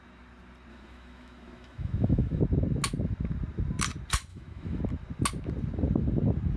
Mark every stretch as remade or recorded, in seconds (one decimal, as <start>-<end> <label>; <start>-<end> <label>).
0.0-0.7 recorded; 0.7-2.4 remade; 2.4-4.3 recorded; 4.3-4.8 remade; 4.8-6.6 recorded